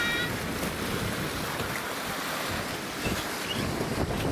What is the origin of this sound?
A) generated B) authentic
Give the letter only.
A